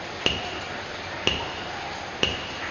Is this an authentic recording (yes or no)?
yes